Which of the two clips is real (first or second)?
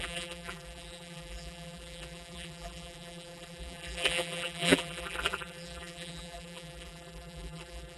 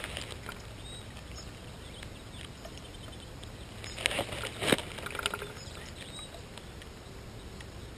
second